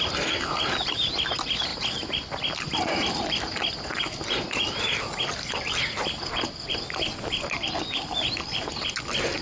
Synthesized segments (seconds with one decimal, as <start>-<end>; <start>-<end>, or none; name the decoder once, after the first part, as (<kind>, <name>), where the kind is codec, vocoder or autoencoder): none